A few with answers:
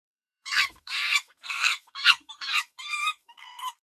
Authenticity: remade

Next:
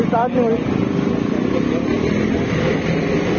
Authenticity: recorded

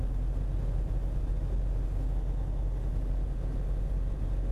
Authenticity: recorded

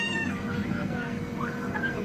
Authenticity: remade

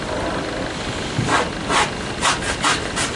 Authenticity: recorded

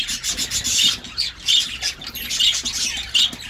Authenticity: recorded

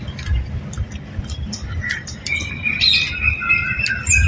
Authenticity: recorded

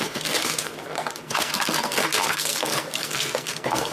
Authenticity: remade